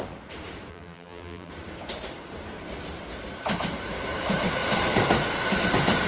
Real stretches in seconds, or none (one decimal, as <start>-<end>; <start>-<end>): 0.0-0.7; 1.5-6.1